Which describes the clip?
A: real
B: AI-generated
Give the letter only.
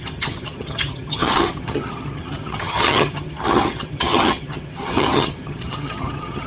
B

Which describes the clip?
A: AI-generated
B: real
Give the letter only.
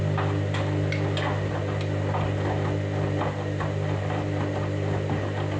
B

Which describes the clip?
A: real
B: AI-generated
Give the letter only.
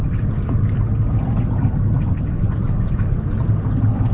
A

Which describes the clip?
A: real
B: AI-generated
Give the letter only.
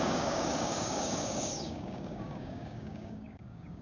B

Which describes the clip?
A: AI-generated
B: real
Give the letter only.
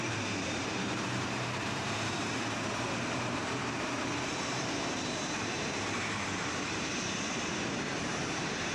A